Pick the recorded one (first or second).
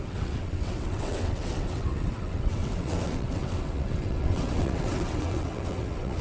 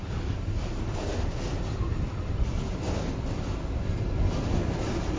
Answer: second